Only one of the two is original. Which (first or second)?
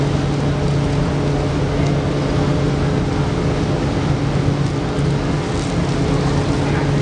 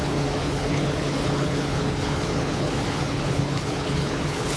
first